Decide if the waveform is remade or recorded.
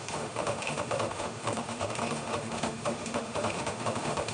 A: remade